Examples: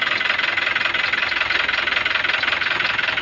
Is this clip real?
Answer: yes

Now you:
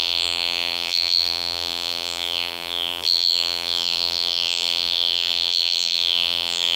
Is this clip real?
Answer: no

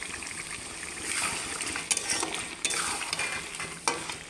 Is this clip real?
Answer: yes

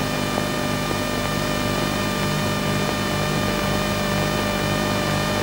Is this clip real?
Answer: yes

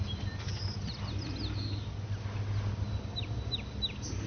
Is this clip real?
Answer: yes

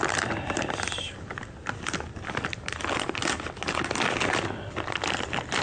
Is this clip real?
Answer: yes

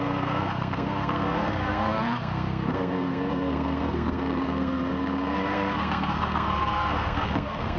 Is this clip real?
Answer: no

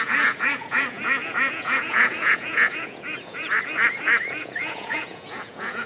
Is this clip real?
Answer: no